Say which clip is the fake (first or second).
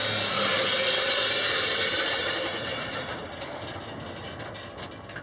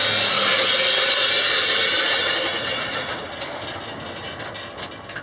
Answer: first